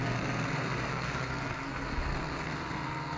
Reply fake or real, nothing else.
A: fake